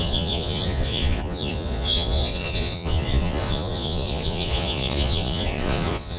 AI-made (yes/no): yes